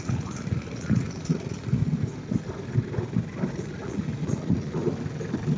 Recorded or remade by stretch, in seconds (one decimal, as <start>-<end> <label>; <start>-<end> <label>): 0.0-1.8 remade; 1.8-3.5 recorded; 3.5-4.8 remade; 4.8-5.6 recorded

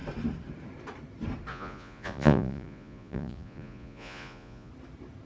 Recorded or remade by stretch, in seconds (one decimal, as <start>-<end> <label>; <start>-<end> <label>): 0.0-1.5 recorded; 1.5-4.7 remade; 4.7-5.3 recorded

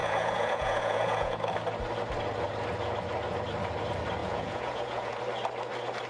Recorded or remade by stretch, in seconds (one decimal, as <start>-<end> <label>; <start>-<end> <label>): 0.0-1.4 remade; 1.4-4.2 recorded; 4.2-5.2 remade; 5.2-6.1 recorded

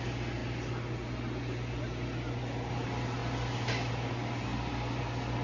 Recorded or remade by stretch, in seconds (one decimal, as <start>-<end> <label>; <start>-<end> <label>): 0.0-5.4 recorded

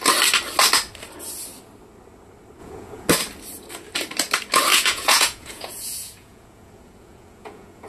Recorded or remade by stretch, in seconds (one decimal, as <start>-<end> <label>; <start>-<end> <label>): 0.0-2.6 recorded; 2.6-3.1 remade; 3.1-4.7 recorded; 4.7-7.9 remade

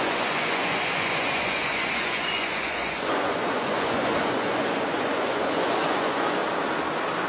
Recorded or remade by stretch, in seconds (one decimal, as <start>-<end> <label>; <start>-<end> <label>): 0.0-6.4 remade; 6.4-7.3 recorded

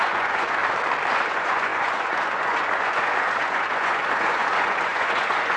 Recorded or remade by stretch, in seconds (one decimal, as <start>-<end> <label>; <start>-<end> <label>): 0.0-0.6 remade; 0.6-1.1 recorded; 1.1-5.6 remade